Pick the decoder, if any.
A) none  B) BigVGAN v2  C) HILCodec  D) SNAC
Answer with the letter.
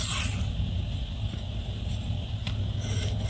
A